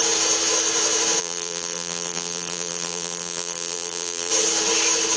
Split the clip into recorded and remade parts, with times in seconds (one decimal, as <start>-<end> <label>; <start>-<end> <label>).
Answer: 0.0-1.2 recorded; 1.2-4.3 remade; 4.3-5.2 recorded